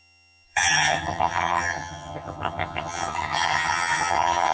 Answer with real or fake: fake